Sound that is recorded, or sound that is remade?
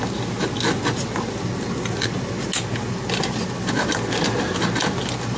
recorded